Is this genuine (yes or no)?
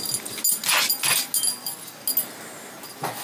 yes